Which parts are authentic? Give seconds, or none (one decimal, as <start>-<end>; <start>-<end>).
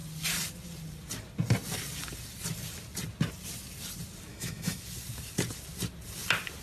0.0-4.3; 4.8-6.6